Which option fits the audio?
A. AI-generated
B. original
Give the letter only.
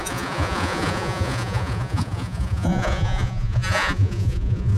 A